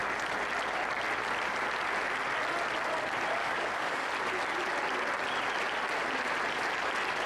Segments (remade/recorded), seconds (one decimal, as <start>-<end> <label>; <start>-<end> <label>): 0.0-3.4 recorded; 3.4-4.1 remade; 4.1-7.3 recorded